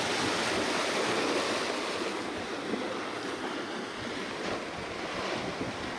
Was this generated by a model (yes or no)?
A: no